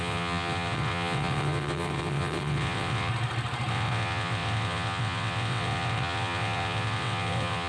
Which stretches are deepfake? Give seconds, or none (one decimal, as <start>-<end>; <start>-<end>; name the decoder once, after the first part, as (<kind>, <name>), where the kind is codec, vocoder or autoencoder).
0.0-3.1 (vocoder, WaveNeXt); 3.7-7.7